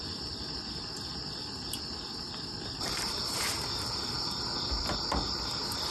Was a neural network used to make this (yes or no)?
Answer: no